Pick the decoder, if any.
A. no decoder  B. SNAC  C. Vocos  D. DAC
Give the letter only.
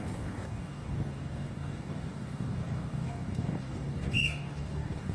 D